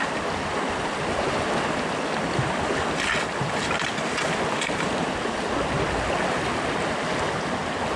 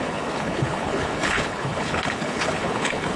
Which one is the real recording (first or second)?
first